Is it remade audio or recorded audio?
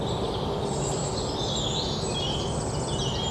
recorded